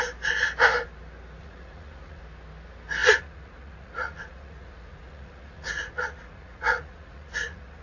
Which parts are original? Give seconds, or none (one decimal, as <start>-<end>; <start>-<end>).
0.0-1.4; 2.2-3.0